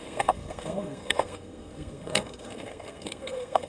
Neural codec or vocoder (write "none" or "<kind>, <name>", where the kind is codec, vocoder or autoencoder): codec, SNAC